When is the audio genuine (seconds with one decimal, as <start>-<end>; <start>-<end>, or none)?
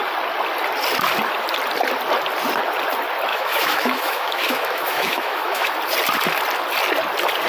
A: 0.0-3.3; 5.7-7.5